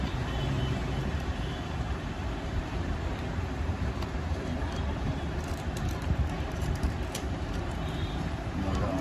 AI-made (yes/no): yes